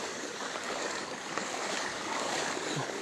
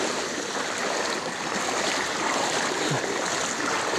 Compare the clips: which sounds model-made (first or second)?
first